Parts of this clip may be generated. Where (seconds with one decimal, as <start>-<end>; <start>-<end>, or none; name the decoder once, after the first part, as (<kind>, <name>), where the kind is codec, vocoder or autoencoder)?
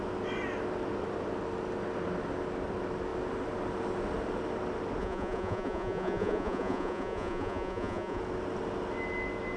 5.0-8.2 (vocoder, Vocos)